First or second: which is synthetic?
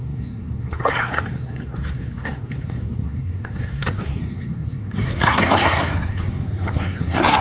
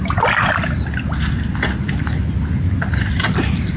first